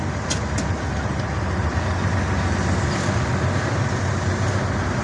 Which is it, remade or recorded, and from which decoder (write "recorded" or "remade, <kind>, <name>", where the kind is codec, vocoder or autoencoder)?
recorded